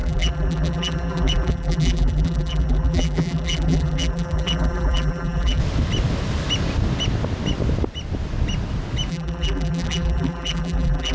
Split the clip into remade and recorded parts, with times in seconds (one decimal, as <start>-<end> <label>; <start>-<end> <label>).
0.0-5.6 remade; 5.6-9.1 recorded; 9.1-11.1 remade